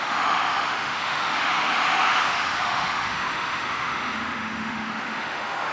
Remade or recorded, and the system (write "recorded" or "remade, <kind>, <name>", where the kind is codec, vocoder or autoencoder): remade, autoencoder, DAC-VAE